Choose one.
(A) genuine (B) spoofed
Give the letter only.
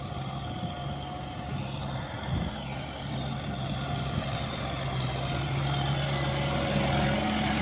A